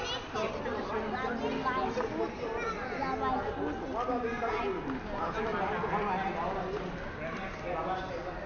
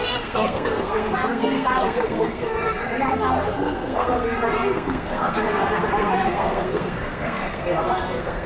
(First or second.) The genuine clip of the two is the first